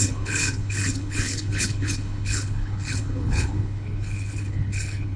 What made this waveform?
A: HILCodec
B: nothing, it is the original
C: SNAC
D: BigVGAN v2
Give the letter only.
A